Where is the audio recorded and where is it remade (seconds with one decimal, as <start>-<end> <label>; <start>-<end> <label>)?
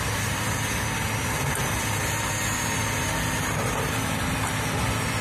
0.0-5.2 recorded